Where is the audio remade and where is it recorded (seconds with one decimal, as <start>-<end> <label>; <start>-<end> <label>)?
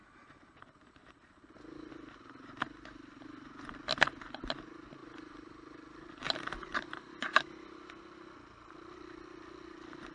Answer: 0.0-1.9 remade; 1.9-5.0 recorded; 5.0-7.1 remade; 7.1-10.1 recorded